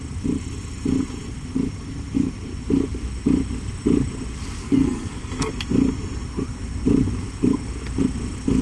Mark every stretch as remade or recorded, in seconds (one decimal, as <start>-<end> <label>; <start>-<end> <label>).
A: 0.0-4.6 recorded; 4.6-5.5 remade; 5.5-8.6 recorded